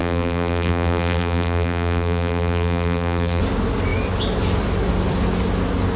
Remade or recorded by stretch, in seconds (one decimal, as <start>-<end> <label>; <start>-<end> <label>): 0.0-3.4 remade; 3.4-6.0 recorded